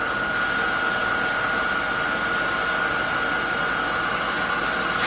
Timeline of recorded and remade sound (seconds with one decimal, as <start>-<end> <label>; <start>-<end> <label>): 0.0-5.1 recorded